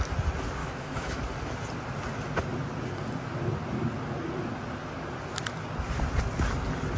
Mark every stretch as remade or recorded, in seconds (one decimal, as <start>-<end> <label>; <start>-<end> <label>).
0.0-0.6 recorded; 0.6-1.2 remade; 1.2-7.0 recorded